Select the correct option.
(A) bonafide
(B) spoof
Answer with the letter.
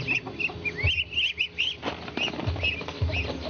A